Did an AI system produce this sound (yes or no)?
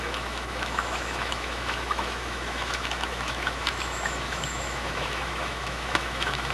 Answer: yes